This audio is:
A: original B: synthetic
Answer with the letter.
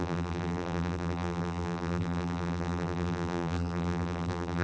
B